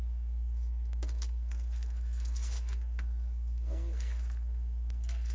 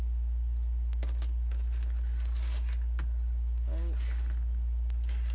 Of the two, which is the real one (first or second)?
second